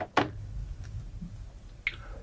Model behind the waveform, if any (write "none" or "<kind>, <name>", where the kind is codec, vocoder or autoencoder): none